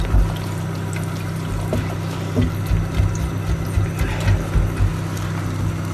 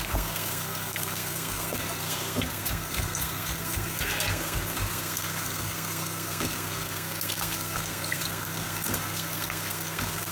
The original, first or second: first